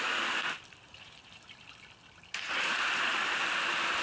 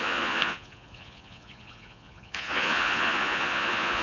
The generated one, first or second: second